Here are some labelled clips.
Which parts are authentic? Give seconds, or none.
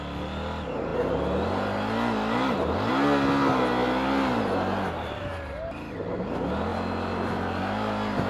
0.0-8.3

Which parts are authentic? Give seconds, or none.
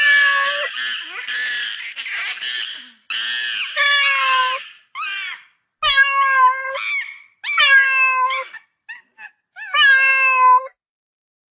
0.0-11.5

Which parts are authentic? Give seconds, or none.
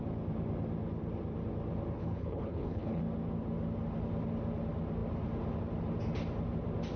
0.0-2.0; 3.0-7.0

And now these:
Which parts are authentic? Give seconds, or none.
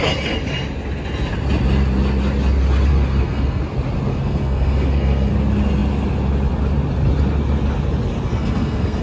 0.0-2.9; 3.6-4.1; 5.3-8.3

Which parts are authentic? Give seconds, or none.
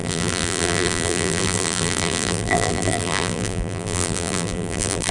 none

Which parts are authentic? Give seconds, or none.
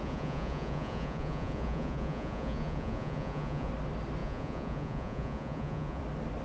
3.7-4.2; 6.0-6.4